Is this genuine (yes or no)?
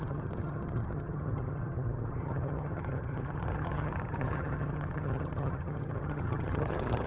no